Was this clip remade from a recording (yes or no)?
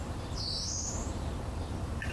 yes